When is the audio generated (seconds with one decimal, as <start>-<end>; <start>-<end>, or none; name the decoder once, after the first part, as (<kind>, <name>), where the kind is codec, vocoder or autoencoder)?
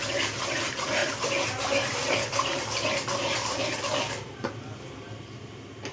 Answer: none